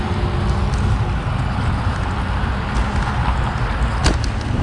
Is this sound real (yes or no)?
yes